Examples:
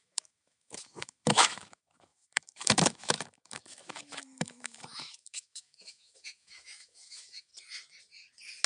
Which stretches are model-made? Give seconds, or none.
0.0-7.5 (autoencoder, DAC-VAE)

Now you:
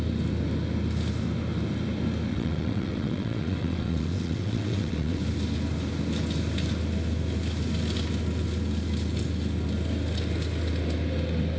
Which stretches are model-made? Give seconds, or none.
2.3-5.2 (vocoder, WaveNeXt)

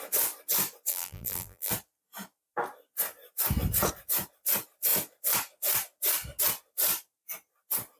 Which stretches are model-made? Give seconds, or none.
0.9-1.7 (vocoder, BigVGAN v2)

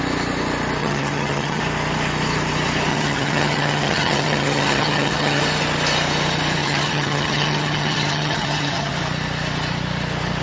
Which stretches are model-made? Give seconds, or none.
0.8-1.6 (vocoder, HiFi-GAN); 2.9-5.4; 6.6-8.9